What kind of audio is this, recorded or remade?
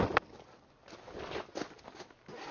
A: recorded